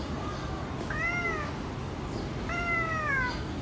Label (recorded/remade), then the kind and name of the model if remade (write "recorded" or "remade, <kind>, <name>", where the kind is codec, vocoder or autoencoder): recorded